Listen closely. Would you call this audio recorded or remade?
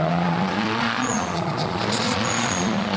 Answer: remade